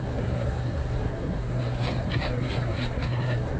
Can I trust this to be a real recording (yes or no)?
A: no